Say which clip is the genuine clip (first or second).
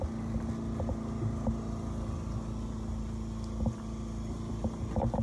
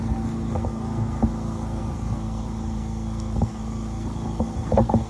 first